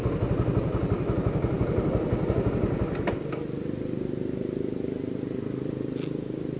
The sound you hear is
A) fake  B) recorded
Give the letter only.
B